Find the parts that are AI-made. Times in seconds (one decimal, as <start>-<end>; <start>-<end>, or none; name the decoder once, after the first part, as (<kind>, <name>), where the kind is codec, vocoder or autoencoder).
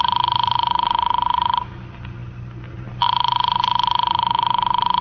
none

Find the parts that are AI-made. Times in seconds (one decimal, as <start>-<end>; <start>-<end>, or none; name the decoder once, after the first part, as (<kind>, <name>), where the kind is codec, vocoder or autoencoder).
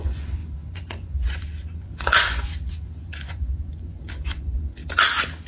0.0-4.8 (vocoder, Vocos)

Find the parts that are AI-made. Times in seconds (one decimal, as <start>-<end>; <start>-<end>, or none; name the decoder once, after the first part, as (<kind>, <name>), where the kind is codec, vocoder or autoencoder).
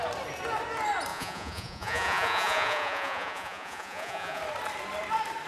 1.1-4.4 (vocoder, Vocos)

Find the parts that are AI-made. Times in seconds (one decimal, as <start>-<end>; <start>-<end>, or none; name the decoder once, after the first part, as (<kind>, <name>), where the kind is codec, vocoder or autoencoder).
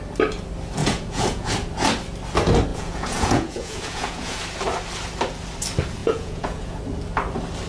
0.8-1.5 (vocoder, Vocos); 2.7-4.4; 6.0-6.8